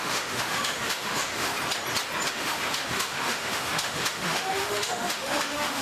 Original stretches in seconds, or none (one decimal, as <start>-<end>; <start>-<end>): 1.5-2.3